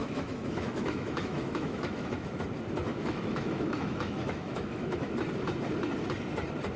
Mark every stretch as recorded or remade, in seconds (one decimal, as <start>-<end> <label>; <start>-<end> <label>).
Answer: 0.0-2.4 remade; 2.4-2.9 recorded; 2.9-5.1 remade; 5.1-6.8 recorded